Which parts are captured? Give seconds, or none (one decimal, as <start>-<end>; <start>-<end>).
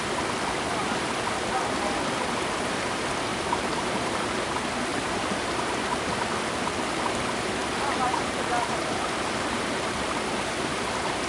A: 0.0-3.3; 4.4-4.9; 5.5-7.6; 10.7-11.3